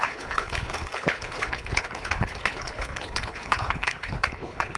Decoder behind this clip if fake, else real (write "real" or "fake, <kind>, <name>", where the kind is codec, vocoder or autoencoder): fake, codec, HILCodec